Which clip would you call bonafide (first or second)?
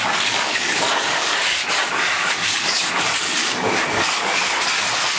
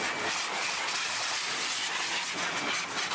second